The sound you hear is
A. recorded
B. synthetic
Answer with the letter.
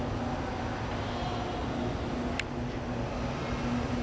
A